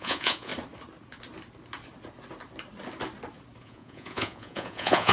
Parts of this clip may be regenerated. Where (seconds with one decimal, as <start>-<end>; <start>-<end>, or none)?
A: 0.0-0.5; 3.6-5.1

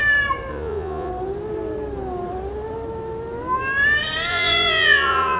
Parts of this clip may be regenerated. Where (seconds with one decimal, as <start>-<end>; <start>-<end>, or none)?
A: 0.5-1.1; 4.3-5.4

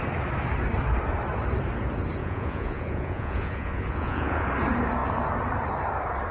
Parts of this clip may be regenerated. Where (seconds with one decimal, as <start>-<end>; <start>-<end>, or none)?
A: 2.2-4.5

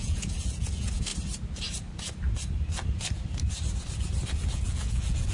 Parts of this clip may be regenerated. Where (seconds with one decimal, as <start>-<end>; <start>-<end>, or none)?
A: 0.0-1.1; 4.3-5.3